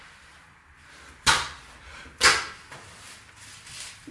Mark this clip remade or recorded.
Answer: recorded